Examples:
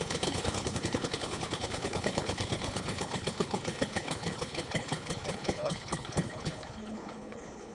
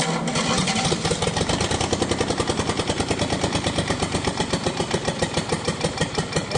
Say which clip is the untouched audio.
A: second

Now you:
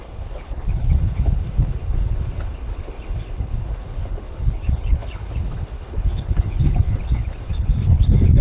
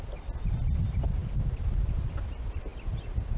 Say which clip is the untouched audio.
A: second